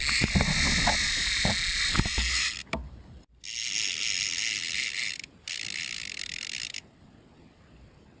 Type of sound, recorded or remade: recorded